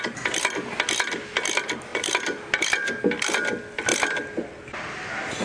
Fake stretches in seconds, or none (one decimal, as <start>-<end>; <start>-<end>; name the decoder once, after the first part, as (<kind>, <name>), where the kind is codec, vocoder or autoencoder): none